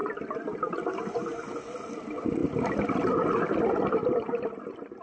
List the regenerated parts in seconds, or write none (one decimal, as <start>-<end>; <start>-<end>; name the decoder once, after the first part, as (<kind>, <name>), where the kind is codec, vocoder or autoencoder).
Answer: none